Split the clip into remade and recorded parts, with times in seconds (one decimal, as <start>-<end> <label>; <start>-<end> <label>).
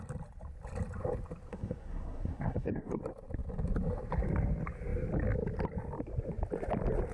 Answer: 0.0-1.5 recorded; 1.5-3.0 remade; 3.0-7.1 recorded